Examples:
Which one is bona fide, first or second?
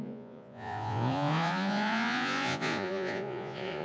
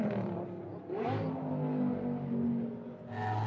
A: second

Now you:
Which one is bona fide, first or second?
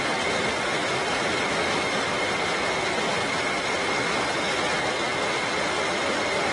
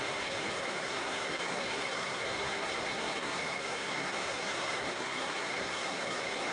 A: first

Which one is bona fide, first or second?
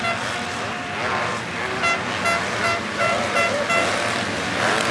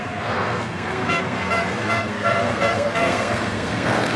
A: first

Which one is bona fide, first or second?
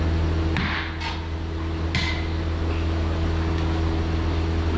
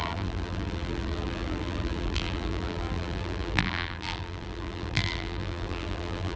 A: first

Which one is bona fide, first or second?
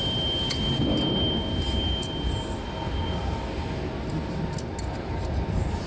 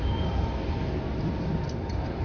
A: first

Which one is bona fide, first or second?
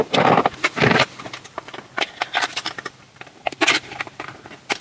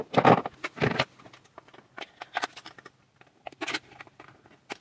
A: second